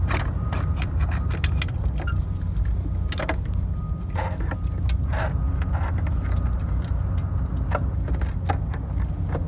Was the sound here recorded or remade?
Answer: recorded